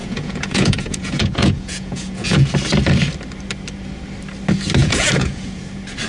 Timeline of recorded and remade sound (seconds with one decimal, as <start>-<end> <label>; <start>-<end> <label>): 0.0-2.5 remade; 2.5-4.8 recorded; 4.8-5.6 remade; 5.6-6.1 recorded